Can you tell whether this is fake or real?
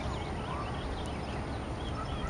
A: real